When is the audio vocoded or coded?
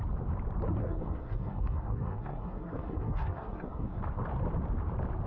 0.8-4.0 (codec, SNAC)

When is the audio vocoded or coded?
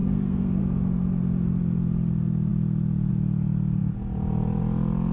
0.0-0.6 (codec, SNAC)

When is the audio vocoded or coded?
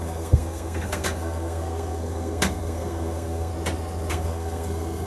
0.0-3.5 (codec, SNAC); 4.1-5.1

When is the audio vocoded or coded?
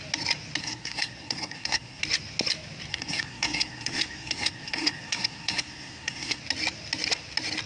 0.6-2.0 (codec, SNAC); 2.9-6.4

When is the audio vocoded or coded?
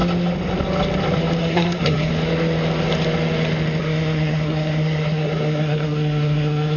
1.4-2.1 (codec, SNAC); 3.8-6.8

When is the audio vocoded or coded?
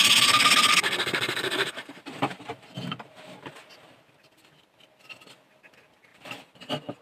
0.7-2.0 (codec, SNAC)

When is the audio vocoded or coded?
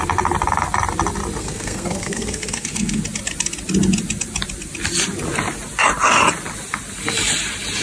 1.4-3.0 (codec, SNAC)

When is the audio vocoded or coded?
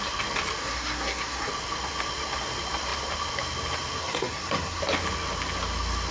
0.6-1.5 (codec, SNAC); 4.0-4.8